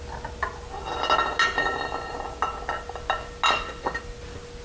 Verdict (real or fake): real